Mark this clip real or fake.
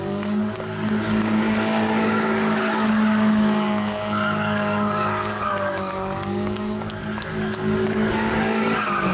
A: fake